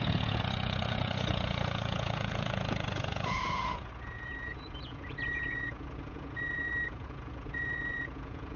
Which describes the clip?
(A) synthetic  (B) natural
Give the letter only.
A